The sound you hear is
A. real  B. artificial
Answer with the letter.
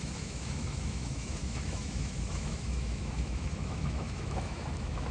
B